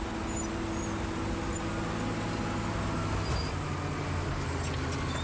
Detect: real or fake real